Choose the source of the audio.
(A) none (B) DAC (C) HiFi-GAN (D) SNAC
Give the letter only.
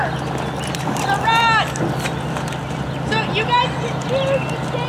A